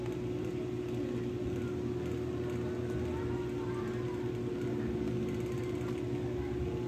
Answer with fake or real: real